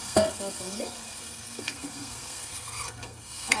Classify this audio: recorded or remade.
remade